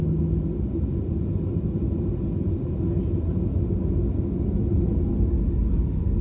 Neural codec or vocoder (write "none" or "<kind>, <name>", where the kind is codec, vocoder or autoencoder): none